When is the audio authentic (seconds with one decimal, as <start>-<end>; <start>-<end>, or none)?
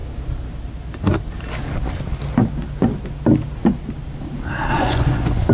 0.0-4.7